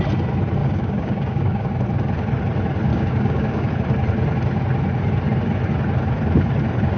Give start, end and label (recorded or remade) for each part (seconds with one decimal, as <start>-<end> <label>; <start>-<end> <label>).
0.0-0.6 recorded; 0.6-1.7 remade; 1.7-2.9 recorded; 2.9-3.7 remade; 3.7-7.0 recorded